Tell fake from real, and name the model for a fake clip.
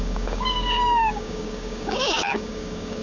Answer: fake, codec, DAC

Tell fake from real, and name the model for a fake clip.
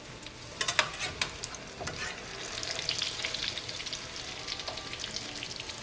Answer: real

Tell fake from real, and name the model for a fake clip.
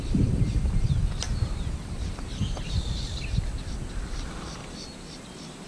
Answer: real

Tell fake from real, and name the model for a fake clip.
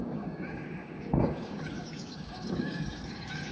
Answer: fake, codec, DAC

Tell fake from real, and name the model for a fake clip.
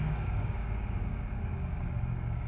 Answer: fake, codec, DAC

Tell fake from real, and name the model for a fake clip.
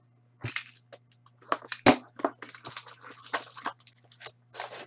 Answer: real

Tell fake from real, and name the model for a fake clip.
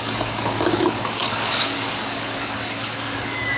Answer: fake, codec, DAC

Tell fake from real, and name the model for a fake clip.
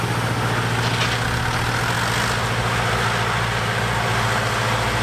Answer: real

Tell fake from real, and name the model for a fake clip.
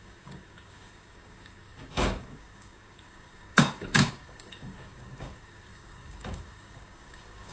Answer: fake, codec, DAC